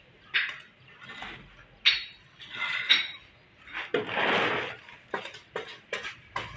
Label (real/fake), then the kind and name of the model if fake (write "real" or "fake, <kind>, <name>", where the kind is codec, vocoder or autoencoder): real